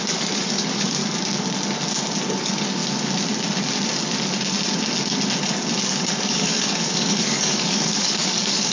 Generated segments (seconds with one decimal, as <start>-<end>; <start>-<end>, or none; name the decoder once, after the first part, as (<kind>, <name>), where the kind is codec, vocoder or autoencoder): 0.0-1.0 (codec, DAC); 2.4-2.8; 5.8-8.7